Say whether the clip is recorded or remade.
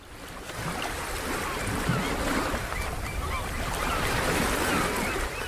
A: recorded